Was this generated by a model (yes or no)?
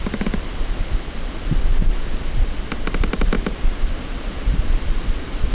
yes